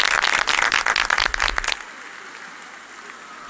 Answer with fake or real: real